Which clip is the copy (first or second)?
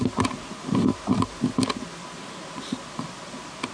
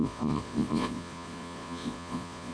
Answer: second